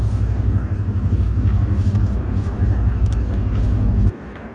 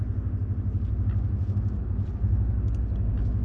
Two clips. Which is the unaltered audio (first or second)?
second